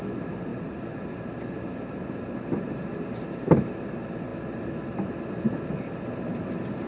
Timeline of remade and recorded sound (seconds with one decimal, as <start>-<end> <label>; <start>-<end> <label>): 0.0-6.9 recorded